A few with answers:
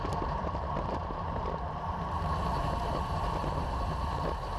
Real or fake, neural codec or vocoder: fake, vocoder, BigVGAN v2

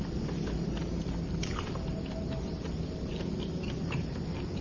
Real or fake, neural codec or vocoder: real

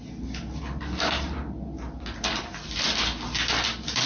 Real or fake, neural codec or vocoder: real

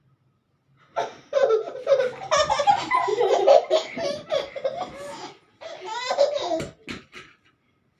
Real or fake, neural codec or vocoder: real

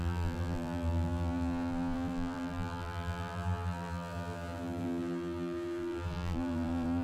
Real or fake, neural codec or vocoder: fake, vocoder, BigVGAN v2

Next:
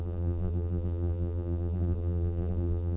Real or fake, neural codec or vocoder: fake, vocoder, BigVGAN v2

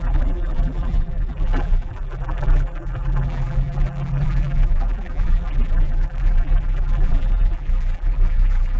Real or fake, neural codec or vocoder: fake, vocoder, BigVGAN v2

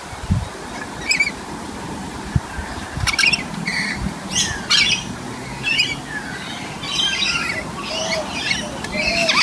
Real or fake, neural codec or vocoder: real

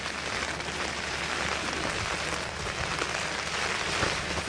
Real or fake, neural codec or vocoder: fake, vocoder, BigVGAN v2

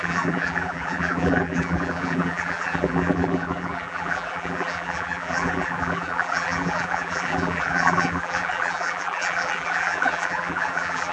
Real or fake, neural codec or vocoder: fake, vocoder, BigVGAN v2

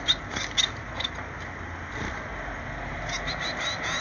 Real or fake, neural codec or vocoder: real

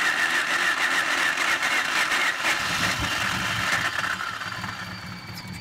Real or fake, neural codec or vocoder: fake, vocoder, BigVGAN v2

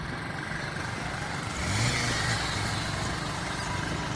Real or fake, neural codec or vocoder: real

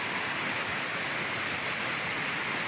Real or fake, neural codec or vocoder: real